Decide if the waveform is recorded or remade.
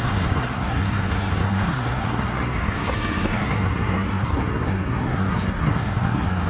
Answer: remade